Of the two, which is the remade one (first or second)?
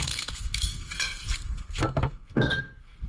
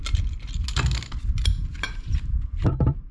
first